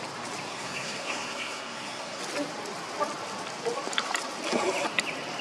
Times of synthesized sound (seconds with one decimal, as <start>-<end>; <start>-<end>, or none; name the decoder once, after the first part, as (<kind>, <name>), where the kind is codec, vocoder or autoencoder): 0.5-2.2 (codec, SNAC)